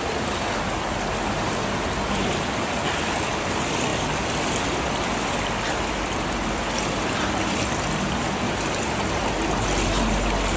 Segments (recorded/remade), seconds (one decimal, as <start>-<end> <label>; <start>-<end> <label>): 0.0-10.6 recorded